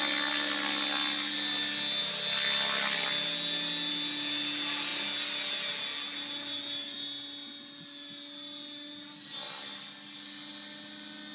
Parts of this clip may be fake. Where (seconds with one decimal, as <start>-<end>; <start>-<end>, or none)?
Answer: none